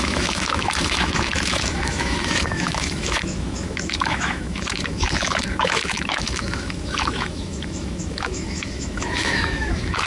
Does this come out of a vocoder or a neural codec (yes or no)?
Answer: yes